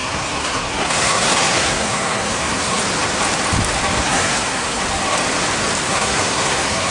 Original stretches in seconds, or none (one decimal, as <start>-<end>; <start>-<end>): 2.8-4.0; 4.8-5.9